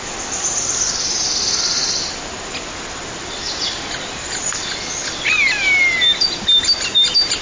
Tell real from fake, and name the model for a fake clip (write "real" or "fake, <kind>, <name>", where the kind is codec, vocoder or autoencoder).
real